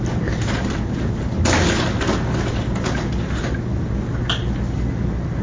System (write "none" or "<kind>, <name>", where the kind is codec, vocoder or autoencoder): none